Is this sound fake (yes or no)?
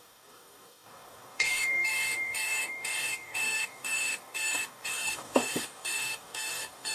yes